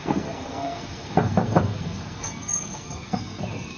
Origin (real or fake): fake